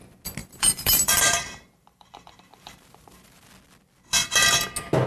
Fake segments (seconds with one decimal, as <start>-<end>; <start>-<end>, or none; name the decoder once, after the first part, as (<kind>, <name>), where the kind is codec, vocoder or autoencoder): 0.4-3.5 (vocoder, BigVGAN v2)

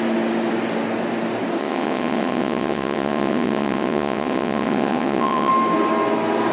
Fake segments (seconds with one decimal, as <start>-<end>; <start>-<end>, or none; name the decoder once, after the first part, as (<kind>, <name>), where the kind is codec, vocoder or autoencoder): 1.6-5.5 (vocoder, WaveNeXt)

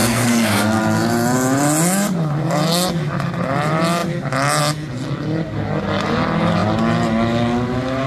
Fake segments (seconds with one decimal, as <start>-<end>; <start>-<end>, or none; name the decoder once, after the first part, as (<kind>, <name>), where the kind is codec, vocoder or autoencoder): 0.0-0.8 (codec, SNAC)

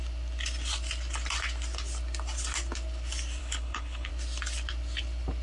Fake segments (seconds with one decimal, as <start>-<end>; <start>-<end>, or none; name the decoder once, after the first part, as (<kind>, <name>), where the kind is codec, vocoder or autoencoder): 3.4-4.1 (codec, HILCodec)

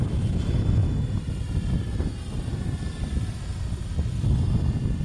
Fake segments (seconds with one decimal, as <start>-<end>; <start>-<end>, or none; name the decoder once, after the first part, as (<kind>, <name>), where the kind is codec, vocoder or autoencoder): none

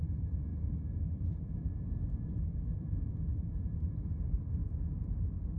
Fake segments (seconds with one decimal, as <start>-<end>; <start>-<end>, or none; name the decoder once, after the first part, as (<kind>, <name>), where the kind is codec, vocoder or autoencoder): 0.0-0.5 (vocoder, BigVGAN v2); 1.5-4.6